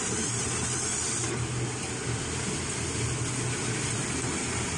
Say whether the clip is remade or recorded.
recorded